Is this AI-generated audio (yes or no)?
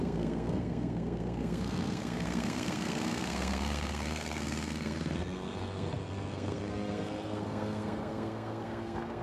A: yes